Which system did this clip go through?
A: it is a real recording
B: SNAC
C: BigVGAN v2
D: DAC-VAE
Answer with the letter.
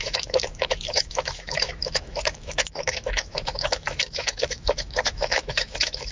D